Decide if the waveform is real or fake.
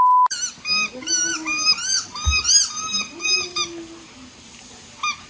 real